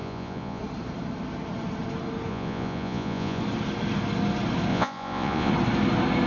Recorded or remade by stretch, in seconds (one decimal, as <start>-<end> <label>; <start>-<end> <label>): 0.0-0.6 remade; 0.6-2.3 recorded; 2.3-3.4 remade; 3.4-4.7 recorded; 4.7-5.5 remade; 5.5-6.3 recorded